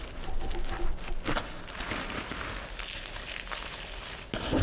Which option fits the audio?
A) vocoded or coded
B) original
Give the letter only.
B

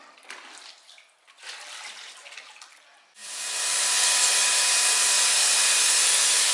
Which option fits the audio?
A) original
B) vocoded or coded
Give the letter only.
A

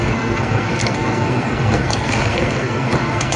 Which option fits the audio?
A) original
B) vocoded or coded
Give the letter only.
B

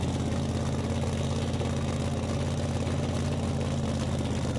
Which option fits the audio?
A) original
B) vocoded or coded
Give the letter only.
A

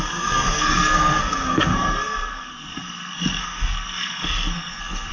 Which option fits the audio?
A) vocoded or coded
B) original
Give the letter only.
A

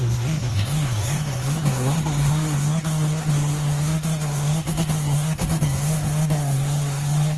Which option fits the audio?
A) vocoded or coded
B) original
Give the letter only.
A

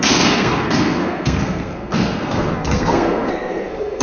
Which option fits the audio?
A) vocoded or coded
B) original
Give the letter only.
A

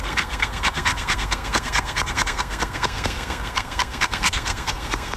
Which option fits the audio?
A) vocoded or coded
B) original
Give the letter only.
A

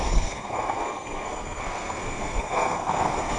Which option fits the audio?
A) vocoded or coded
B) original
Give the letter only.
A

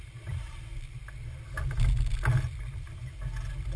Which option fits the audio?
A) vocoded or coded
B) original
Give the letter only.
B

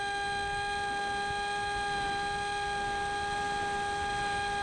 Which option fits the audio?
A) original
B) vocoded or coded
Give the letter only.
A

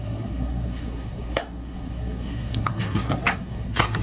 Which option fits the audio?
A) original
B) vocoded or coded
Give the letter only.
B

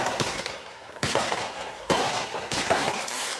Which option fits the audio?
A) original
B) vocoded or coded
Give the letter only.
B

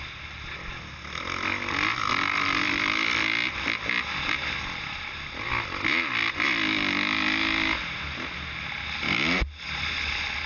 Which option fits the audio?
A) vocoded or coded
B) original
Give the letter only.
B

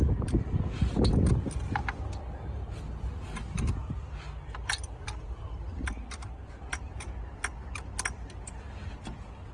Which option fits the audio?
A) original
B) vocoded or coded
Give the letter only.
A